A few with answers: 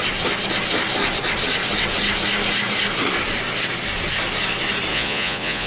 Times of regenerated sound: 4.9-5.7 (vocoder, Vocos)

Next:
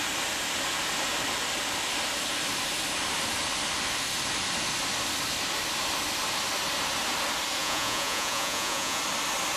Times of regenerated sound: 7.6-9.0 (vocoder, Vocos)

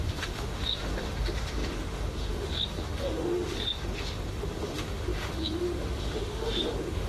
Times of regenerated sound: 0.0-7.1 (autoencoder, DAC-VAE)

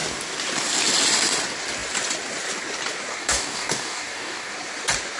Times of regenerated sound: 3.1-4.5 (codec, DAC)